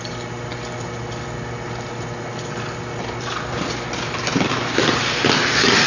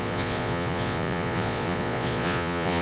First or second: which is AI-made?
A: second